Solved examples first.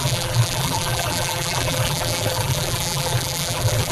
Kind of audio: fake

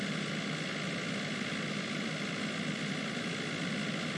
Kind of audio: real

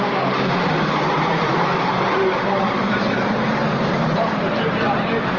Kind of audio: fake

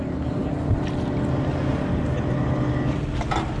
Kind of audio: real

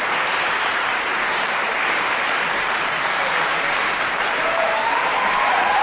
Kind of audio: fake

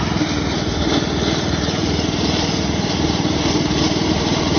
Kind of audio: fake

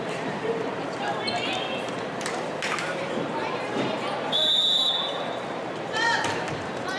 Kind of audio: fake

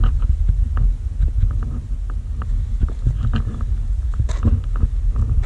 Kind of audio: real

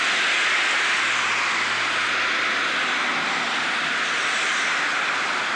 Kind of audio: fake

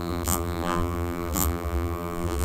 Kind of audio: fake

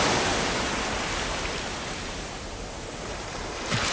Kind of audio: real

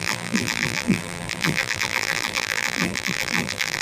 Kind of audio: fake